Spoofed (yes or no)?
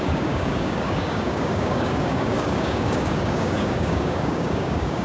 yes